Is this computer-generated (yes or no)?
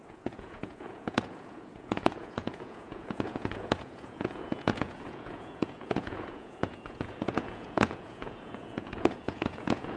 yes